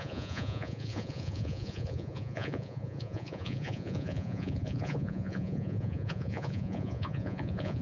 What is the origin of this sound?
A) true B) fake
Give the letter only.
B